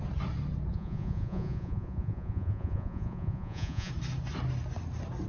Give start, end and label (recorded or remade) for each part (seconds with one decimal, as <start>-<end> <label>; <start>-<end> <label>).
0.0-0.7 recorded; 0.7-3.9 remade; 3.9-5.3 recorded